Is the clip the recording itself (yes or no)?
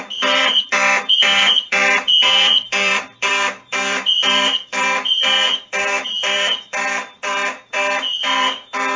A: no